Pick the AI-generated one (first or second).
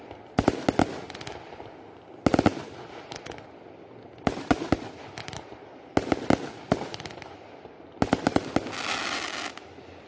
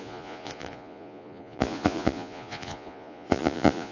second